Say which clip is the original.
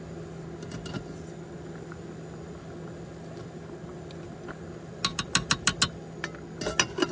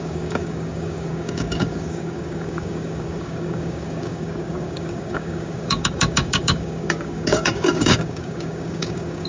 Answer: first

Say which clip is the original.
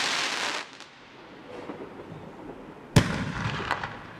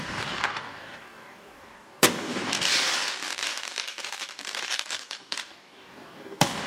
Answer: first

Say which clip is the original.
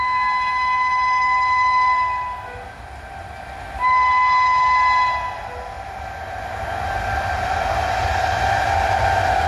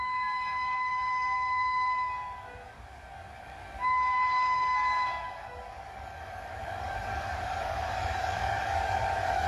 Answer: first